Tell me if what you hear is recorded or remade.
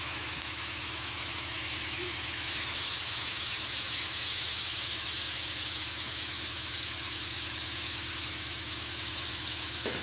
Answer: remade